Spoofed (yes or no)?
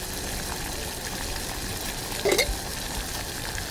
no